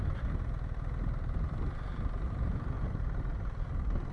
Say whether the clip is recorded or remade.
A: recorded